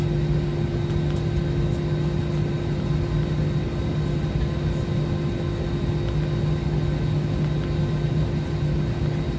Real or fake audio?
real